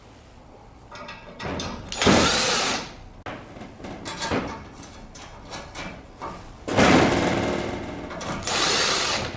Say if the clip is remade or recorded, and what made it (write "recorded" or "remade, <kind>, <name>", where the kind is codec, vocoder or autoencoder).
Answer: recorded